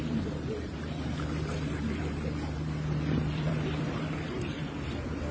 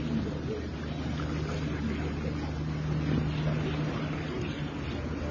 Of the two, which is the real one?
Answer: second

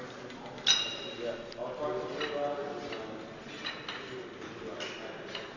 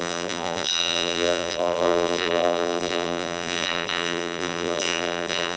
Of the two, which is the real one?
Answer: first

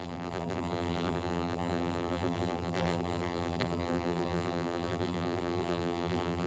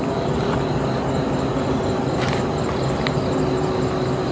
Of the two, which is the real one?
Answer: second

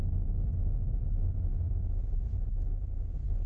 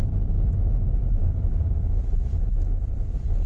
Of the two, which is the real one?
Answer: first